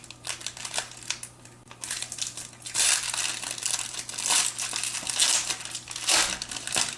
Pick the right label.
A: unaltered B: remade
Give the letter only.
A